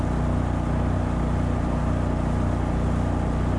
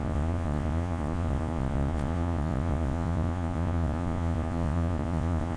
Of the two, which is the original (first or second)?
first